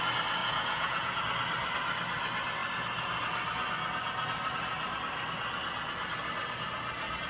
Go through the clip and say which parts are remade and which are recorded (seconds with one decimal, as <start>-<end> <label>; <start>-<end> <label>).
0.0-0.4 recorded; 0.4-1.2 remade; 1.2-7.3 recorded